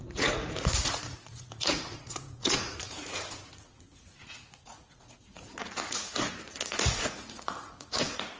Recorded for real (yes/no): no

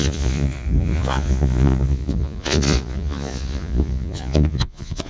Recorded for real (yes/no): no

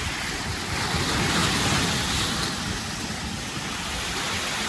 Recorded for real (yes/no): yes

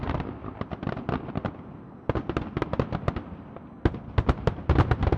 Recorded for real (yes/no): yes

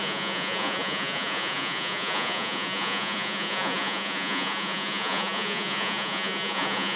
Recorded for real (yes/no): no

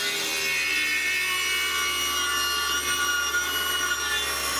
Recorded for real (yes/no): yes